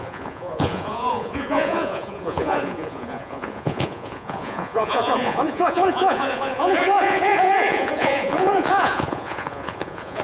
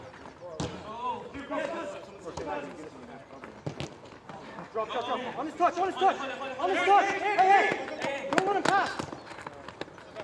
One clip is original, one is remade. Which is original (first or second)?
second